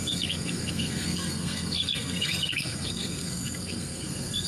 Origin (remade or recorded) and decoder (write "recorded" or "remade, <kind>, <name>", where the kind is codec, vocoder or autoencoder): remade, codec, SNAC